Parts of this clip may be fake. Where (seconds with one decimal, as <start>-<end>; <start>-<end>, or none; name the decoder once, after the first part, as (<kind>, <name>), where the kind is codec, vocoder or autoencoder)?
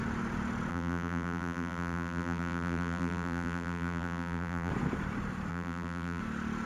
0.7-4.7 (vocoder, BigVGAN v2); 5.5-6.2